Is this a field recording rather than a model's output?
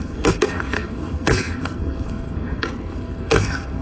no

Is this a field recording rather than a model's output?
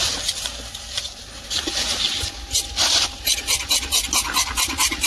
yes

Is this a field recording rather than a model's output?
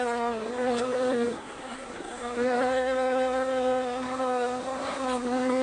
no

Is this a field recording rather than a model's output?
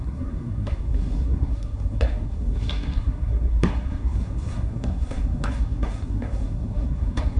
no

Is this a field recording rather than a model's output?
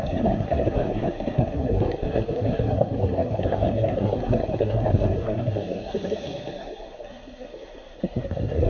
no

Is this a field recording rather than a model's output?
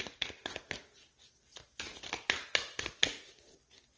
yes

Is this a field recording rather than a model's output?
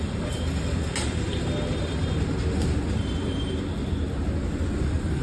yes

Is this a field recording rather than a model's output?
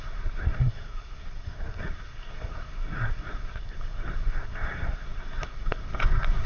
no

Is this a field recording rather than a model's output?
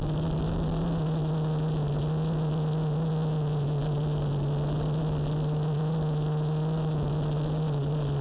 yes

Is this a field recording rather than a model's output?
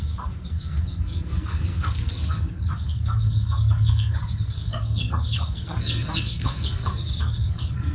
no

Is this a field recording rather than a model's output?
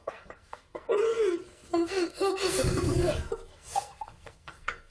no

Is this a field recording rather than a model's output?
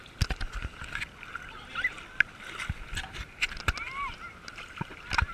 yes